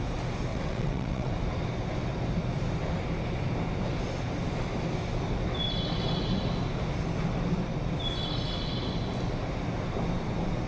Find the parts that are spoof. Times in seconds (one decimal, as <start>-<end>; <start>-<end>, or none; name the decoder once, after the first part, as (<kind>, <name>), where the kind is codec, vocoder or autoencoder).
0.5-1.3 (vocoder, WaveNeXt)